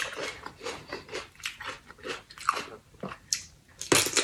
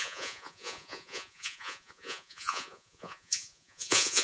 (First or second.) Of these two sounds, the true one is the first